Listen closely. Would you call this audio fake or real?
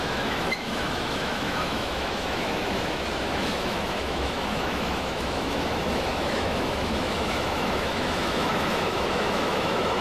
fake